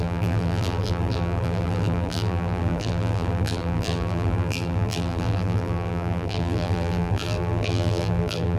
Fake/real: fake